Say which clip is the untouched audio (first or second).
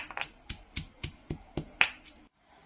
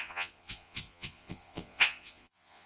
first